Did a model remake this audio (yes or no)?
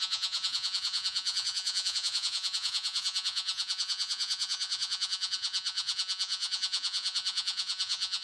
yes